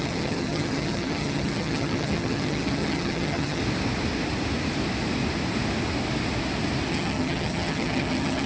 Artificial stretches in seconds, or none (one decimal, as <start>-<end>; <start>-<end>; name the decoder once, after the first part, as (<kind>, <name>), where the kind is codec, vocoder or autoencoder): 0.0-3.6 (vocoder, HiFi-GAN); 6.9-8.5